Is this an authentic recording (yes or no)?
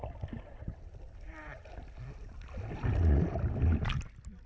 yes